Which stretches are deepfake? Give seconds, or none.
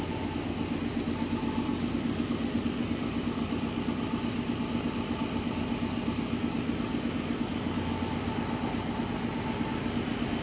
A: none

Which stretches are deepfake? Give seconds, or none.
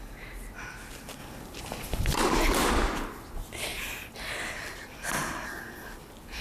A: none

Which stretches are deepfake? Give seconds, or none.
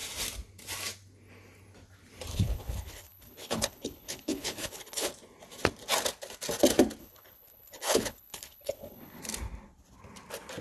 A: 2.3-5.1 (codec, HILCodec); 7.0-9.2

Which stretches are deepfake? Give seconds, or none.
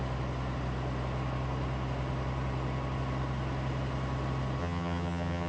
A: 4.6-5.5 (vocoder, HiFi-GAN)